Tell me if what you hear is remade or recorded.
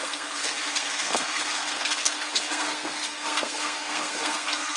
remade